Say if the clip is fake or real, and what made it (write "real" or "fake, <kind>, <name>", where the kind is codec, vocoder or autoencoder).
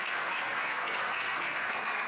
fake, codec, SNAC